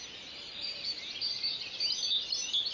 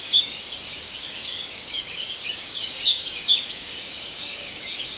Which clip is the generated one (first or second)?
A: second